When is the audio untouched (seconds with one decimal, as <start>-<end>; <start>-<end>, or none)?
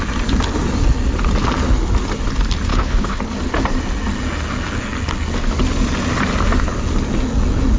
0.0-2.7; 3.2-7.8